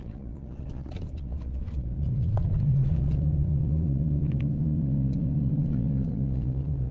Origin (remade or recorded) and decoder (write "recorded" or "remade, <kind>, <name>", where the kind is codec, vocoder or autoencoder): remade, vocoder, Vocos